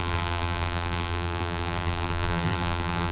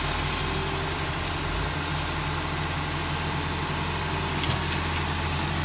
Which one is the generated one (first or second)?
first